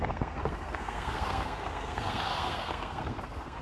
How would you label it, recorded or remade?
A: remade